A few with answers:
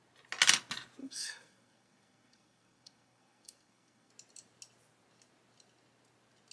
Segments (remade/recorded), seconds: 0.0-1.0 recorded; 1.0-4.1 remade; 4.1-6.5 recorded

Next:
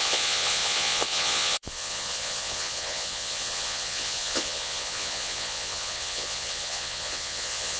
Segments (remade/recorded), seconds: 0.0-7.8 remade

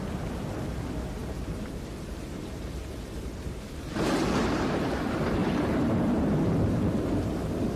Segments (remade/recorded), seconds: 0.0-1.2 recorded; 1.2-3.8 remade; 3.8-5.4 recorded; 5.4-5.9 remade; 5.9-7.8 recorded

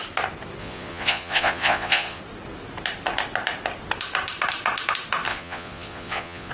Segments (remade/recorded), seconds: 0.0-0.6 recorded; 0.6-2.2 remade; 2.2-5.3 recorded; 5.3-6.5 remade

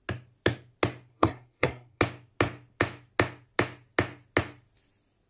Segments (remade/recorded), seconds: 0.0-1.1 recorded; 1.1-2.0 remade; 2.0-5.3 recorded

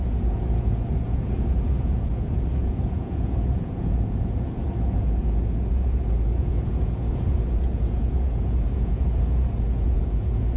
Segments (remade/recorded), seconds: 0.0-10.6 remade